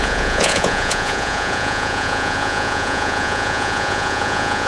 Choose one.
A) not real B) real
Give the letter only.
A